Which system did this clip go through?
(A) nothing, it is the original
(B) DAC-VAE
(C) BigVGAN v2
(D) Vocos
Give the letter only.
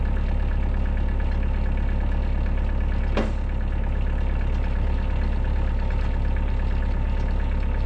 A